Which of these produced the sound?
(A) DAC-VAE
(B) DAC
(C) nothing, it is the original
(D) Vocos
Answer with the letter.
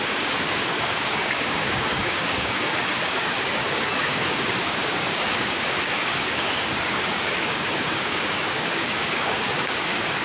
B